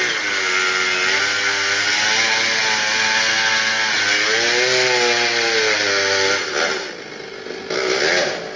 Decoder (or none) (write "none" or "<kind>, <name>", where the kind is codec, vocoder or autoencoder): none